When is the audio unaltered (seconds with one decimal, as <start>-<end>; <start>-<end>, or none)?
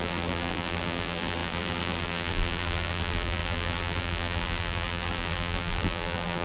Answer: none